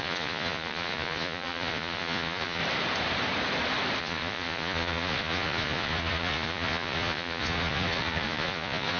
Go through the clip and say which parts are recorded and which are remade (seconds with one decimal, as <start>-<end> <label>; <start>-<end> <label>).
0.0-2.6 remade; 2.6-4.0 recorded; 4.0-9.0 remade

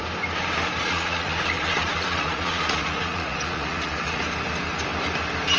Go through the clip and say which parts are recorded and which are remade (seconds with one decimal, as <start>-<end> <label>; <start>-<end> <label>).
0.0-0.8 recorded; 0.8-4.2 remade; 4.2-5.6 recorded

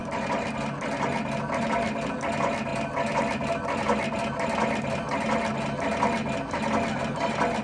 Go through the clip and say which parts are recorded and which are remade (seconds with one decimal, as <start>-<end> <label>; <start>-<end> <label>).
0.0-7.6 recorded

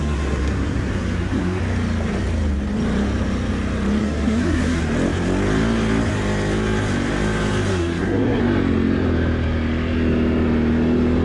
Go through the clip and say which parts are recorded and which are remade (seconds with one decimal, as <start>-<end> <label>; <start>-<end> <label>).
0.0-1.6 remade; 1.6-4.0 recorded; 4.0-4.8 remade; 4.8-7.7 recorded; 7.7-8.4 remade; 8.4-11.2 recorded